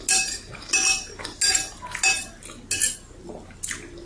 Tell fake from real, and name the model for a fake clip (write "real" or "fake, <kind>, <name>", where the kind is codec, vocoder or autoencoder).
real